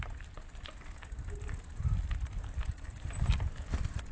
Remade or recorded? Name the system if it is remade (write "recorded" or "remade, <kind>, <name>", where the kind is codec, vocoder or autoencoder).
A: recorded